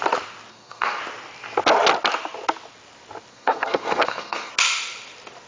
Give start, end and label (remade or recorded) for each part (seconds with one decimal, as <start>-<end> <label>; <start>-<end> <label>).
0.0-0.5 recorded; 0.5-1.0 remade; 1.0-3.3 recorded; 3.3-4.5 remade; 4.5-5.5 recorded